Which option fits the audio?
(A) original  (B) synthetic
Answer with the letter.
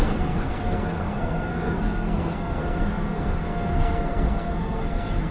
B